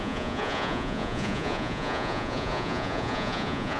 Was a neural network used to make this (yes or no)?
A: yes